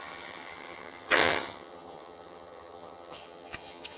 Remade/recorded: remade